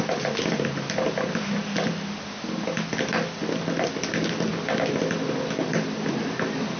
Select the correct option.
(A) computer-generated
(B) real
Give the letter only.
B